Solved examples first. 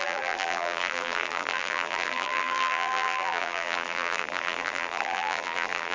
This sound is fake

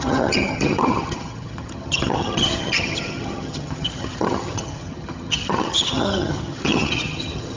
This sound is fake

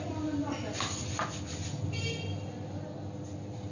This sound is real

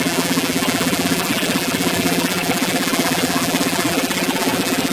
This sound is fake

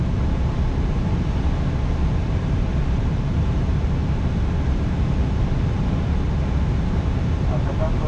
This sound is fake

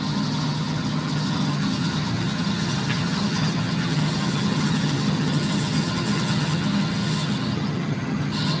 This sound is fake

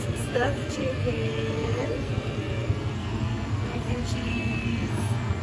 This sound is fake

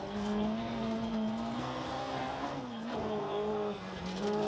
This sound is fake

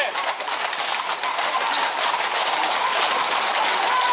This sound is real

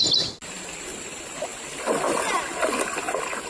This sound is real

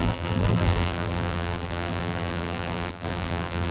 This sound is fake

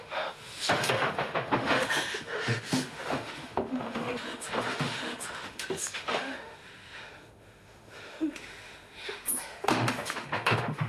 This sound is fake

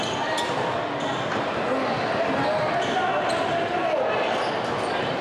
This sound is real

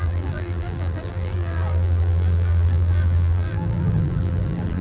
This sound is fake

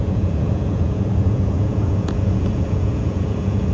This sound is fake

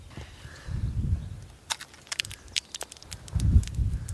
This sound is real